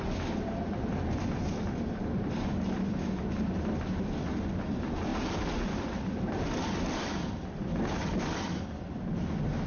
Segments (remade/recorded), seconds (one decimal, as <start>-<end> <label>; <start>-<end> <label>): 0.0-5.1 recorded; 5.1-8.2 remade; 8.2-9.7 recorded